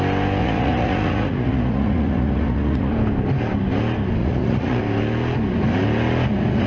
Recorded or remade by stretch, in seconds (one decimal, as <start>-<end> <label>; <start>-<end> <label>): 0.0-0.4 recorded; 0.4-2.9 remade; 2.9-4.2 recorded; 4.2-4.8 remade; 4.8-6.7 recorded